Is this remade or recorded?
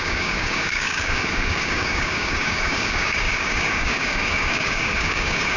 remade